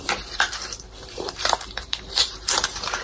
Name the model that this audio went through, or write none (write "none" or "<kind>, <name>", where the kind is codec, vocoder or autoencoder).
vocoder, BigVGAN v2